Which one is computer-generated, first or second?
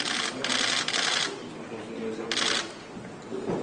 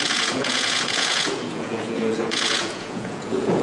second